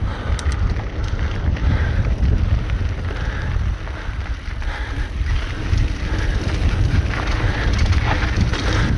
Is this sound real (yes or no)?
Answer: yes